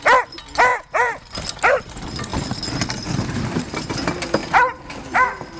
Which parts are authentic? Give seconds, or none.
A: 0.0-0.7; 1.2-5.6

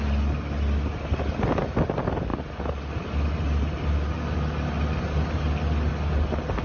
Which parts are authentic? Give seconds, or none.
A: 0.0-6.6

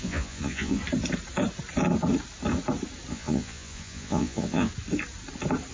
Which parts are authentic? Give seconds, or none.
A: 0.8-3.1; 4.7-5.7

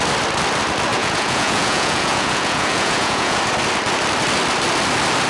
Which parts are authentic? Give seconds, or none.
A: 0.0-0.9; 3.4-5.3

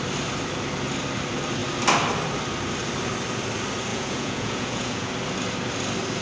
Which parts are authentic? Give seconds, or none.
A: 0.0-3.9; 5.1-6.2